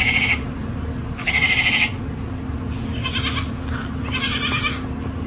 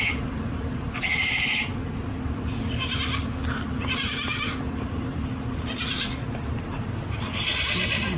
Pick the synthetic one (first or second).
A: second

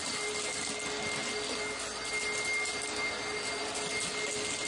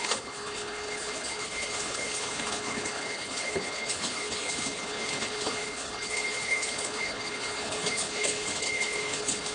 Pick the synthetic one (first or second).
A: second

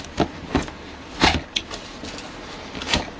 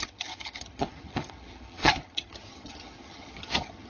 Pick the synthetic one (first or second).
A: second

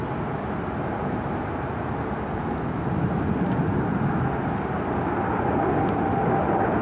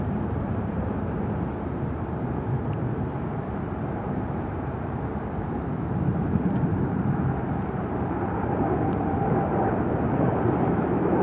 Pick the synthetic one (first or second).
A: second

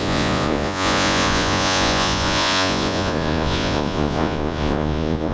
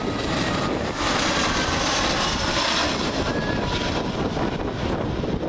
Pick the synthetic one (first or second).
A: first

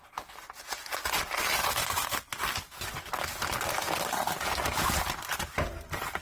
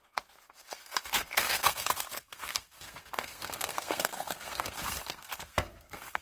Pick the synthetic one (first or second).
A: second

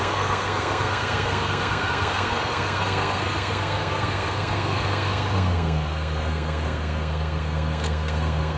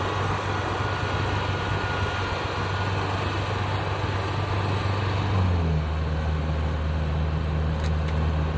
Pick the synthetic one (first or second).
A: first